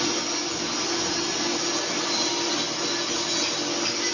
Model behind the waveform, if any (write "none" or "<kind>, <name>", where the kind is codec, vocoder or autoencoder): none